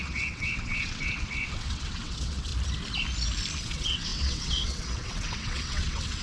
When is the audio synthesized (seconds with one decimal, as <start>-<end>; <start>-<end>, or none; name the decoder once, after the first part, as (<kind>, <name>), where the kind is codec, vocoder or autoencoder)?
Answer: 0.0-2.5 (vocoder, WaveNeXt); 3.6-6.2